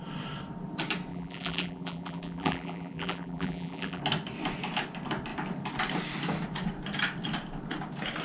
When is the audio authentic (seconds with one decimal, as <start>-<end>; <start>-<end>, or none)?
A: 0.0-1.1; 4.0-8.2